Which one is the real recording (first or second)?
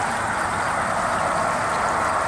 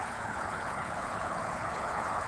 first